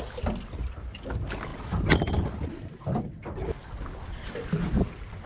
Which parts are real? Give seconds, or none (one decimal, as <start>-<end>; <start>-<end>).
0.0-5.3